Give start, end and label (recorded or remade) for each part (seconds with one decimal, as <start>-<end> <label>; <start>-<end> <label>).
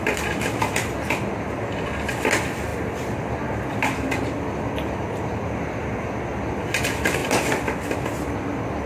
0.0-8.9 recorded